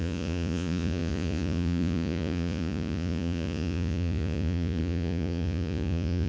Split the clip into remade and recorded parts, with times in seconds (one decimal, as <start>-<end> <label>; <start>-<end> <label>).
0.0-6.3 remade